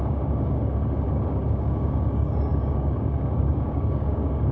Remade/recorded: remade